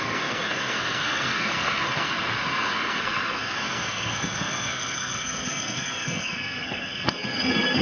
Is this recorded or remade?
remade